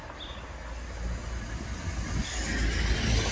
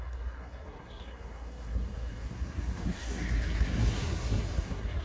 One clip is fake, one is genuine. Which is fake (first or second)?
second